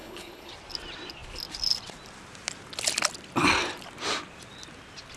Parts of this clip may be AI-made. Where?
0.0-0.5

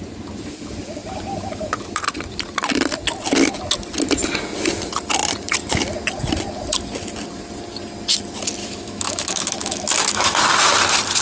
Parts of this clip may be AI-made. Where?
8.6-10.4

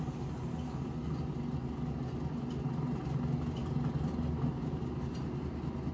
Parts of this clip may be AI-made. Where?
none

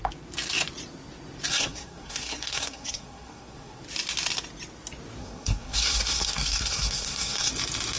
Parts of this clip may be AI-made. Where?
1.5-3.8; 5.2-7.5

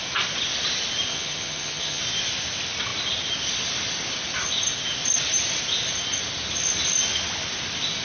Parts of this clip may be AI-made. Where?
1.1-2.0

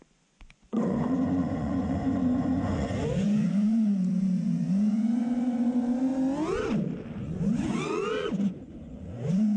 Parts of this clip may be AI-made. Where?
0.0-6.1; 7.2-9.6